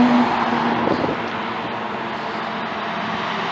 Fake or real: real